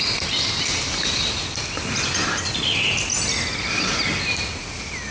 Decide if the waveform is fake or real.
real